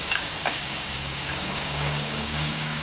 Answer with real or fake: fake